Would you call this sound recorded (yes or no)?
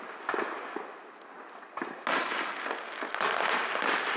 yes